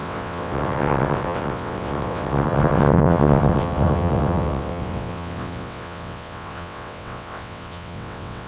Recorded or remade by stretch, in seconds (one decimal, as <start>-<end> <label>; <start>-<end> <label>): 0.0-8.5 remade